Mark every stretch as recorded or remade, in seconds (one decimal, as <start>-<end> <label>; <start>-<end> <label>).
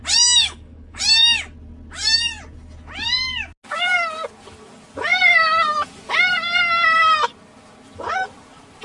0.0-0.4 recorded; 0.4-1.0 remade; 1.0-8.8 recorded